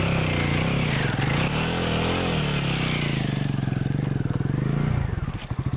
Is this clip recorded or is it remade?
recorded